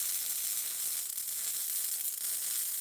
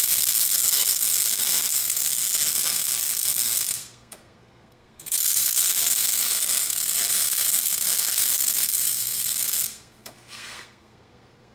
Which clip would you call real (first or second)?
first